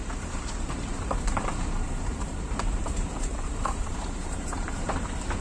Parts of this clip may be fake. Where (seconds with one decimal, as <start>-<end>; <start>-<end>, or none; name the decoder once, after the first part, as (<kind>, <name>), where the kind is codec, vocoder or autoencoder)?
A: 0.0-5.4 (vocoder, BigVGAN v2)